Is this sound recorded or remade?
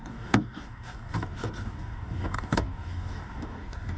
remade